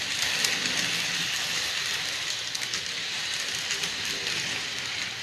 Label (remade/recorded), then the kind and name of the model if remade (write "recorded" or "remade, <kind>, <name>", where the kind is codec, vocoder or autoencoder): recorded